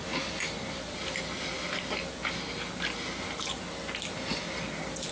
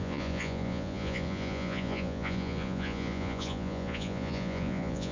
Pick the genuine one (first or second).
first